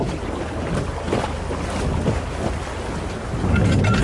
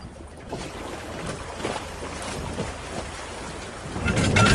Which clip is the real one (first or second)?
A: first